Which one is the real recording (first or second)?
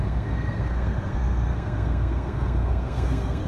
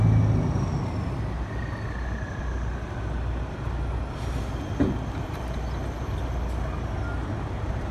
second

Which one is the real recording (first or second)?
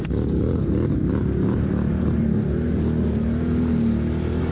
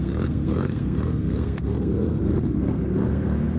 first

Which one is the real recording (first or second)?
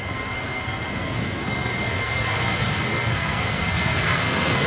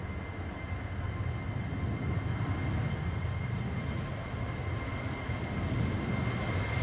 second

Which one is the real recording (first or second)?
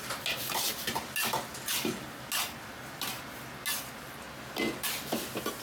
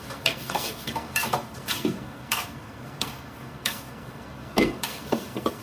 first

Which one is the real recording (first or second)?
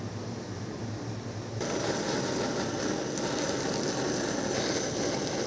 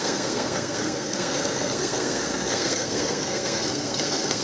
first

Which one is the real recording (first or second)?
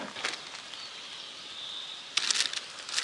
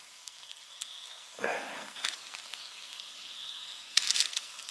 first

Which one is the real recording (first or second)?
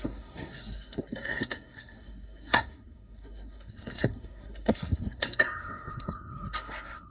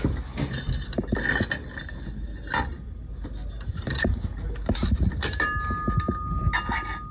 second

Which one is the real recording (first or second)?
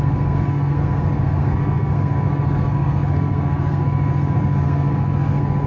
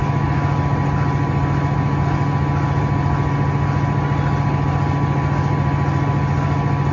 second